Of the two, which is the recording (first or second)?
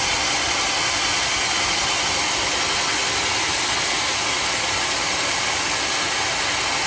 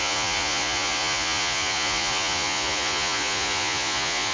first